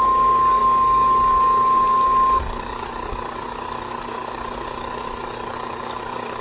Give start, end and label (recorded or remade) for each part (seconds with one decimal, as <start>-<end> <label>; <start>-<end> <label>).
0.0-6.4 remade